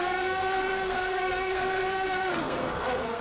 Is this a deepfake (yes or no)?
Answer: yes